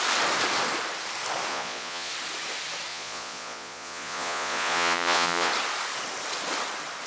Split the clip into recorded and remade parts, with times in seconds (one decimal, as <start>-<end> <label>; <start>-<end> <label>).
0.0-1.5 recorded; 1.5-2.1 remade; 2.1-2.9 recorded; 2.9-5.5 remade; 5.5-7.1 recorded